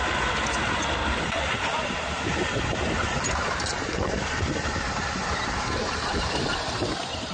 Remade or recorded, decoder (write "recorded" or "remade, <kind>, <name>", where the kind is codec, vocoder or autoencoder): remade, vocoder, BigVGAN v2